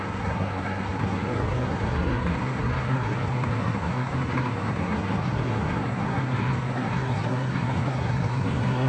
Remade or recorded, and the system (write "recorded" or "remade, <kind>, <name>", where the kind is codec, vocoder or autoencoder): remade, codec, SNAC